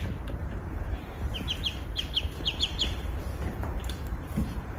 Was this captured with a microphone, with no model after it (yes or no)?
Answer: no